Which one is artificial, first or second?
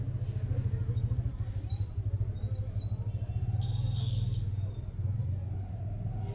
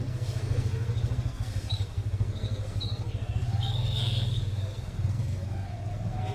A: second